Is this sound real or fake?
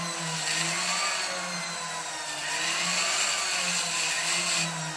real